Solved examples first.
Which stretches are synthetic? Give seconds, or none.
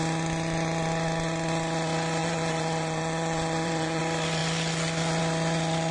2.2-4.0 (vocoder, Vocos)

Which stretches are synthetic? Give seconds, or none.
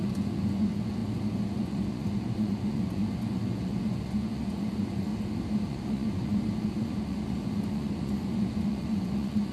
0.0-5.1 (vocoder, Vocos); 5.7-9.5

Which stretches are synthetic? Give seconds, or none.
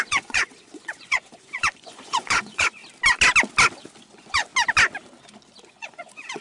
0.0-2.8 (vocoder, Vocos); 4.0-4.5; 5.6-6.4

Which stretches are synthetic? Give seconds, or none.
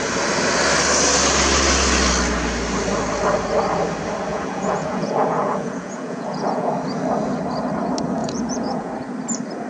4.3-6.7 (vocoder, Vocos); 8.2-8.9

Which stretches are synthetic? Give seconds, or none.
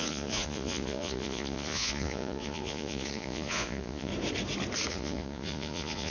0.0-4.1 (vocoder, Vocos); 4.9-6.1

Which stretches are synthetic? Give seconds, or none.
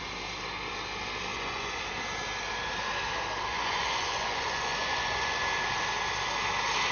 1.3-1.8 (vocoder, Vocos); 3.5-5.4